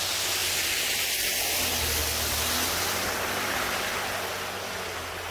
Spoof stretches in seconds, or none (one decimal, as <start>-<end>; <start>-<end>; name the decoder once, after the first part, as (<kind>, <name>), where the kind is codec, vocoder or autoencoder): none